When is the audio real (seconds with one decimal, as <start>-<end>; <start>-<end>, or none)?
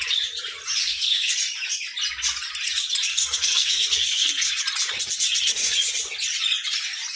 0.0-0.8; 1.3-3.1; 4.5-7.2